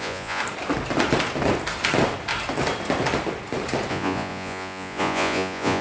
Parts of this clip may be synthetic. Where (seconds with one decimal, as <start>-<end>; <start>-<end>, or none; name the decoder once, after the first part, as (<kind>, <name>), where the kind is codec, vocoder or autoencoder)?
0.0-0.4 (vocoder, Vocos); 3.9-5.8